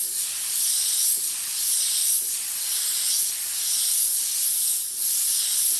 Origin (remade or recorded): recorded